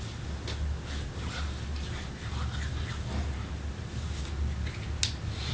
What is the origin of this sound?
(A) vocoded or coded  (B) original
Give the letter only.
B